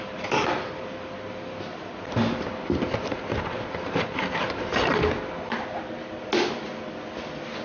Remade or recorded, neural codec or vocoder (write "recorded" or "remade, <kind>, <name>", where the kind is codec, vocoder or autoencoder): recorded